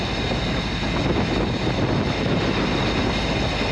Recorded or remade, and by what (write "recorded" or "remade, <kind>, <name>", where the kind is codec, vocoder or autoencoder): recorded